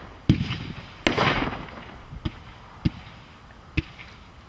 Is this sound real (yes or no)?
yes